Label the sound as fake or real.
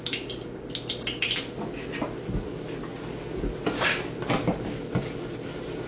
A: real